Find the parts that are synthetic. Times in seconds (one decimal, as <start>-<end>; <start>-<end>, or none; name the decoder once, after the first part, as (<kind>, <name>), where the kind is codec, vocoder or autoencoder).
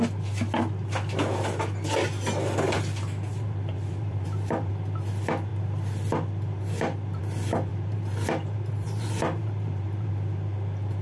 3.3-4.7 (vocoder, BigVGAN v2); 7.7-10.1